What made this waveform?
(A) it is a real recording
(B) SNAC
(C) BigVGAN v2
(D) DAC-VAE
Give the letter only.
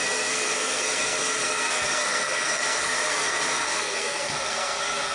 B